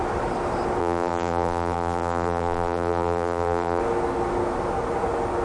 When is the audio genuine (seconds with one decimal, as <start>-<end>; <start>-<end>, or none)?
0.0-0.8; 3.8-5.4